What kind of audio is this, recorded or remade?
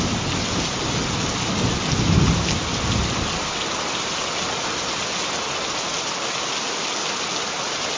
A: recorded